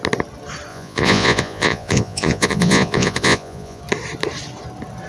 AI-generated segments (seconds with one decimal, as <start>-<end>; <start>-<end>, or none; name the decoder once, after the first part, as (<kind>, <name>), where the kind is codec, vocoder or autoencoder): 0.7-3.8 (vocoder, Vocos)